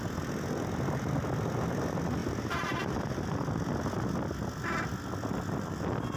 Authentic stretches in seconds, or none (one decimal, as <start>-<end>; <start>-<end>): 0.0-6.2